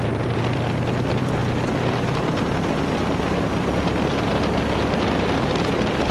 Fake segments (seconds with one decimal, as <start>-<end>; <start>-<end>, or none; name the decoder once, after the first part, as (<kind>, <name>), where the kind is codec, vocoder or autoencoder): 0.0-1.4 (vocoder, BigVGAN v2); 5.1-6.1